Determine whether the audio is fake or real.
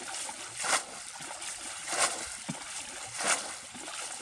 real